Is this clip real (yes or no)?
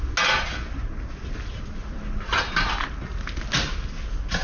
yes